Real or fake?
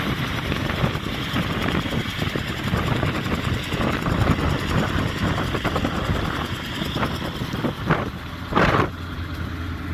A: real